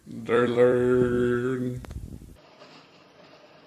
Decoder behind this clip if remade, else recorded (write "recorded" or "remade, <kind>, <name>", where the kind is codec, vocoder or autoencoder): remade, vocoder, BigVGAN v2